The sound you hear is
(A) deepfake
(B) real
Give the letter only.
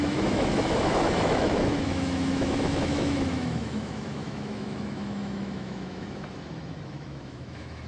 A